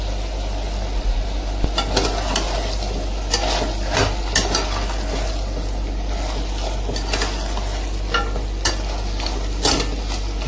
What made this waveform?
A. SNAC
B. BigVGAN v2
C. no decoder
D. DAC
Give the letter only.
C